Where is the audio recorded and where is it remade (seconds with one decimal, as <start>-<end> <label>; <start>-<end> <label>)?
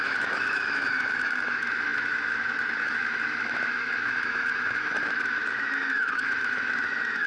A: 0.0-7.3 remade